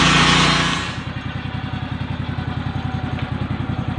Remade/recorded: recorded